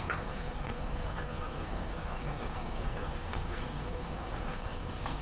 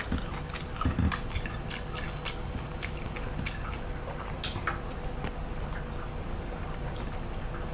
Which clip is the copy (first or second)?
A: first